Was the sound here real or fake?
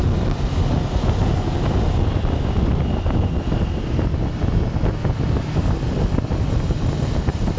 real